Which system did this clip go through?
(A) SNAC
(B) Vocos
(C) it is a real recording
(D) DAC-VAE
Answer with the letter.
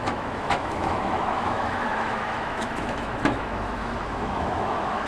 D